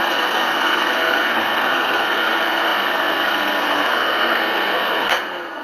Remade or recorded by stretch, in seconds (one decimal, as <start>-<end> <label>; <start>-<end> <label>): 0.0-5.6 remade